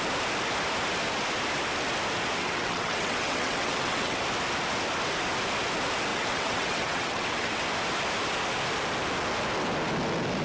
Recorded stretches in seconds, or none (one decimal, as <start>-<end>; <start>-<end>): 0.0-2.4; 4.2-6.1; 7.6-10.4